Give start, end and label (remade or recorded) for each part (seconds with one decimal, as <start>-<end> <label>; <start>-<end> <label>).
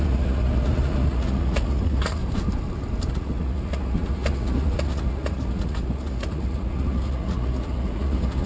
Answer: 0.0-2.2 remade; 2.2-3.1 recorded; 3.1-8.5 remade